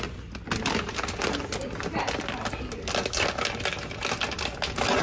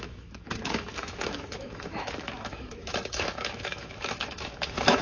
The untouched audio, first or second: first